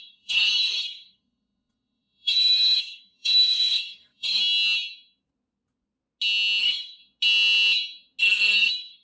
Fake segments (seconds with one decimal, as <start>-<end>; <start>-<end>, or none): 0.0-4.4; 6.6-7.0; 8.2-9.0